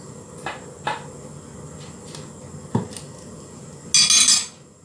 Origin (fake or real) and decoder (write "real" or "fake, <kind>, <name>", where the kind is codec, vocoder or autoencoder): real